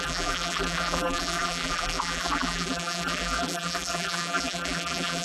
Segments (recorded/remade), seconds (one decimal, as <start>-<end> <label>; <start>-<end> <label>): 0.0-5.2 remade

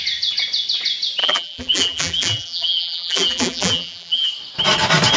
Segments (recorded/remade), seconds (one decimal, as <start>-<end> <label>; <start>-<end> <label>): 0.0-1.2 recorded; 1.2-4.3 remade; 4.3-5.2 recorded